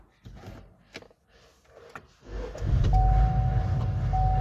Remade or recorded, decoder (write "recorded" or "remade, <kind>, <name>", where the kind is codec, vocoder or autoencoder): recorded